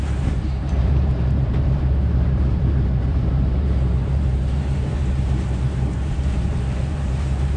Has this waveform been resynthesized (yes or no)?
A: yes